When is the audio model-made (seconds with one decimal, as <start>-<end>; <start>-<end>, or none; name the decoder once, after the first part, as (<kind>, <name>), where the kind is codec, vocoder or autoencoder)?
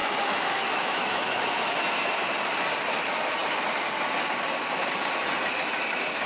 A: 0.0-1.7 (autoencoder, DAC-VAE)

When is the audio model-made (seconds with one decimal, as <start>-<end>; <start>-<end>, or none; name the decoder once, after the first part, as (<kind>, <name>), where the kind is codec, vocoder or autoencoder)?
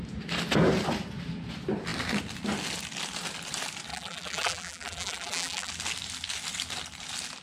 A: 3.9-5.7 (vocoder, BigVGAN v2)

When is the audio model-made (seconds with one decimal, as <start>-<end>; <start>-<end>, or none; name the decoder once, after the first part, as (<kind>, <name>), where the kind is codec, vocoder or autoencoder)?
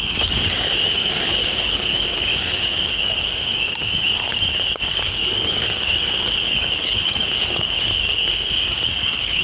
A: 0.0-9.4 (codec, DAC)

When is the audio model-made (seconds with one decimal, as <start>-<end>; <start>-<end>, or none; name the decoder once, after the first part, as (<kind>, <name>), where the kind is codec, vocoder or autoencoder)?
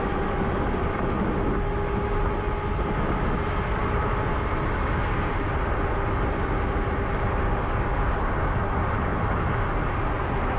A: none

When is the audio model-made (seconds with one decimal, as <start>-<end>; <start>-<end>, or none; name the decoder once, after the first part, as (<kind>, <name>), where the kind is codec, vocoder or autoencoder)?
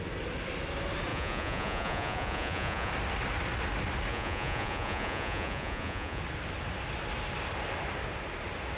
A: 1.1-2.9 (vocoder, Vocos); 4.1-6.2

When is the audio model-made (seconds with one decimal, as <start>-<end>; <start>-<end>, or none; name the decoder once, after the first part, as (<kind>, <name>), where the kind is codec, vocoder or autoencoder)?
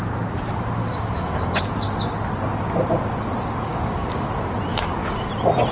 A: 0.8-1.6 (codec, DAC); 3.7-4.3; 4.7-5.3